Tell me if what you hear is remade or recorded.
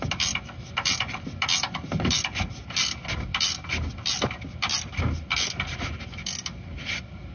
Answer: recorded